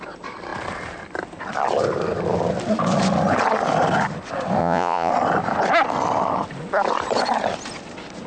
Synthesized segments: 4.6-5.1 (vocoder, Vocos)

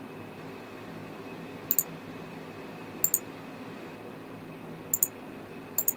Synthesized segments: none

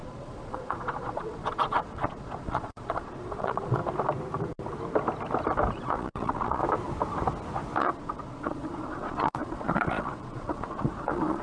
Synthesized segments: 0.0-3.8 (vocoder, Vocos); 5.7-6.6; 7.8-11.4

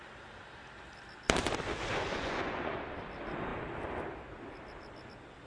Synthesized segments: 1.9-2.8 (vocoder, Vocos)

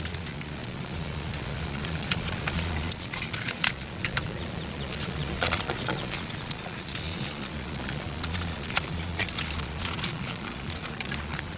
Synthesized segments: 0.0-11.6 (vocoder, Vocos)

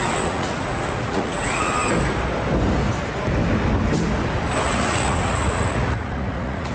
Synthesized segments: 0.0-1.8 (vocoder, Vocos); 4.6-6.7

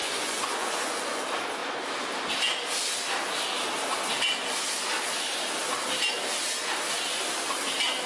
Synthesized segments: 0.0-1.2 (vocoder, Vocos)